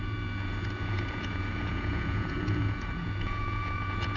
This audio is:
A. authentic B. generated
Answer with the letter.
B